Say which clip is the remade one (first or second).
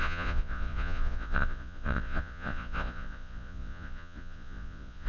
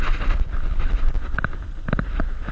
first